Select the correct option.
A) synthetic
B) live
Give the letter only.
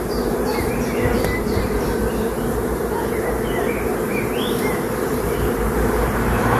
A